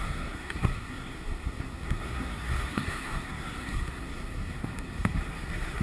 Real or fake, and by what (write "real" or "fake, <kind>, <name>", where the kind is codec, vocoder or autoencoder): fake, codec, SNAC